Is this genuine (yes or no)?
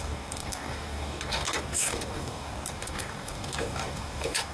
no